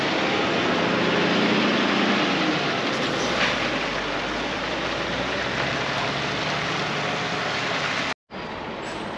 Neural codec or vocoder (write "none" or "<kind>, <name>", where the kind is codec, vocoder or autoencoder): none